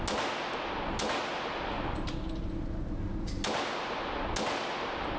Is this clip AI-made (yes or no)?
no